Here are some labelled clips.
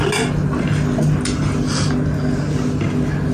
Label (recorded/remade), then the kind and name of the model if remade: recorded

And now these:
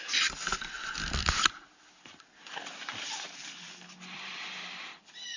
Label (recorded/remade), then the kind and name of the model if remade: remade, vocoder, BigVGAN v2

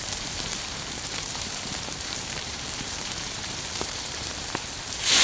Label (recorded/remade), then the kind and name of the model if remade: remade, vocoder, BigVGAN v2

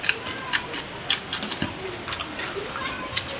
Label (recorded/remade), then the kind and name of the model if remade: recorded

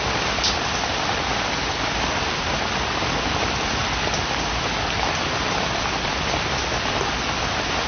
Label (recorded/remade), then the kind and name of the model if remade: recorded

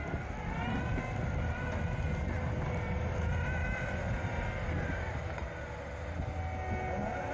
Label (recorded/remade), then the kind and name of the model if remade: recorded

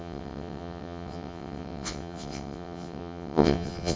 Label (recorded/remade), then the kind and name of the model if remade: remade, vocoder, WaveNeXt